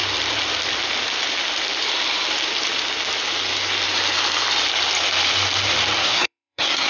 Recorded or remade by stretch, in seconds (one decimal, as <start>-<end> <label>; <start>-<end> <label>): 0.0-6.0 recorded; 6.0-6.9 remade